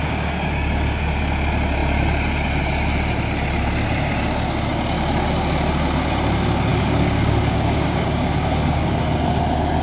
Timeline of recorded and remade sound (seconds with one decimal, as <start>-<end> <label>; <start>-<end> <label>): 0.0-1.0 remade; 1.0-6.7 recorded; 6.7-9.0 remade; 9.0-9.8 recorded